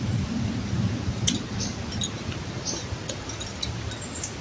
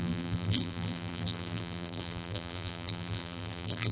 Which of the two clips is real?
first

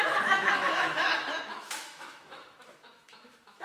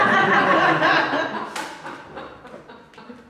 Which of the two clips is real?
second